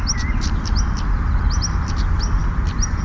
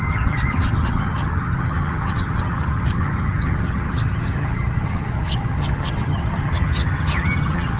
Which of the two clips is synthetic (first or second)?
second